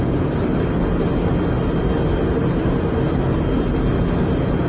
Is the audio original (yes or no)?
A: yes